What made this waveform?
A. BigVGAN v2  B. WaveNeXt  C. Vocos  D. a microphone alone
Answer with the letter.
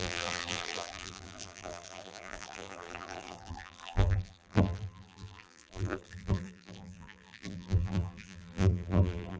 A